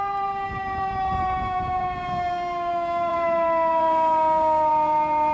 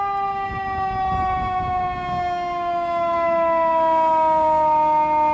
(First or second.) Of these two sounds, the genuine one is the second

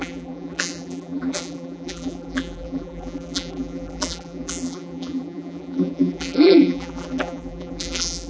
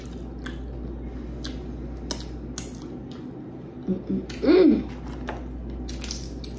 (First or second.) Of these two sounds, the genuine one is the second